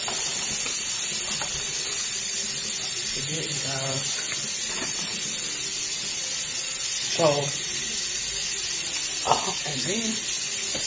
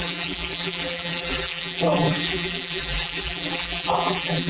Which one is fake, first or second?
second